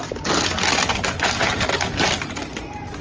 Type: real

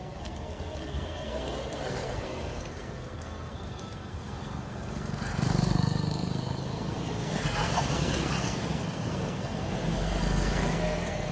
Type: fake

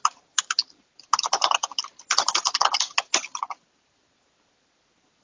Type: real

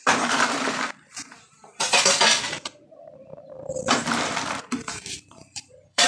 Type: fake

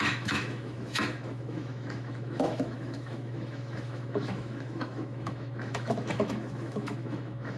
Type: fake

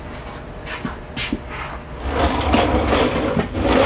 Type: real